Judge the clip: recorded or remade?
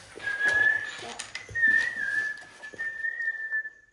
recorded